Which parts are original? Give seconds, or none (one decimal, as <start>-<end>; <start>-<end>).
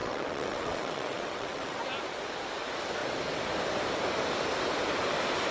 1.8-5.5